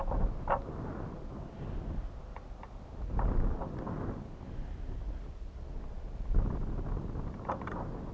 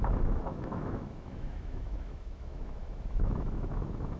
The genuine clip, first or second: first